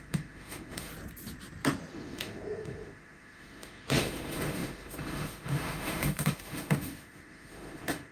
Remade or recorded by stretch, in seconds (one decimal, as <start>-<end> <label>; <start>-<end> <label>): 0.0-0.9 remade; 0.9-1.9 recorded; 1.9-8.1 remade